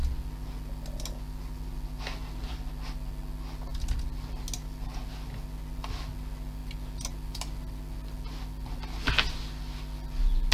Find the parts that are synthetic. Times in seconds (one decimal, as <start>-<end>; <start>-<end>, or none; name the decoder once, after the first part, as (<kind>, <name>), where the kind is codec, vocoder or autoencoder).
none